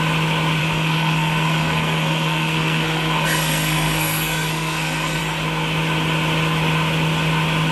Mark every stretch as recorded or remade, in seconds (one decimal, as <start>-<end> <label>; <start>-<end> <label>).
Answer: 0.0-0.6 recorded; 0.6-5.2 remade; 5.2-7.7 recorded